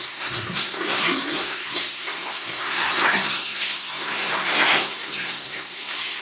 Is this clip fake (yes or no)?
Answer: yes